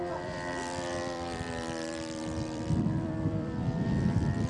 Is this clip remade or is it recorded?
remade